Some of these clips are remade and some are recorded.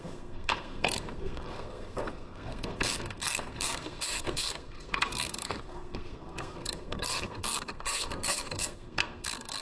remade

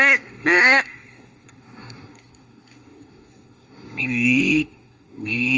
remade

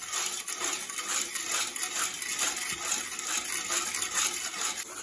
recorded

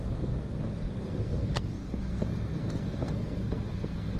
remade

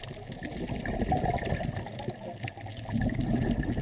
recorded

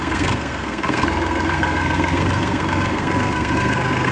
remade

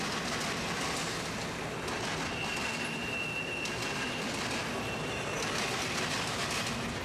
recorded